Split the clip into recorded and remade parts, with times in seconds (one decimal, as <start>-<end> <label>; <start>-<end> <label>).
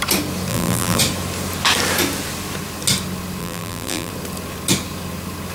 0.0-0.5 recorded; 0.5-1.0 remade; 1.0-3.4 recorded; 3.4-4.1 remade; 4.1-5.5 recorded